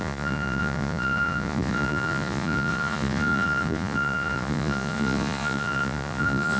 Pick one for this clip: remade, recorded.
remade